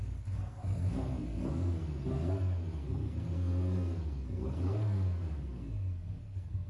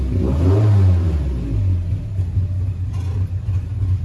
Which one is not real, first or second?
first